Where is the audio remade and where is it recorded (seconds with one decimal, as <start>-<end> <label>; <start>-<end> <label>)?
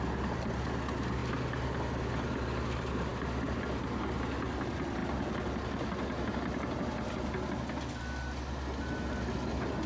0.0-9.9 recorded